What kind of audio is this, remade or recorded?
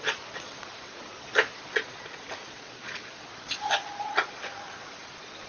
remade